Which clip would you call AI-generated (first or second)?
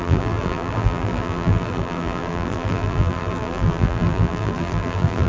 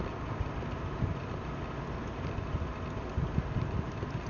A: first